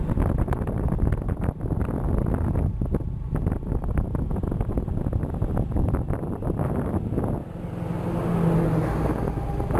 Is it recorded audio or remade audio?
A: recorded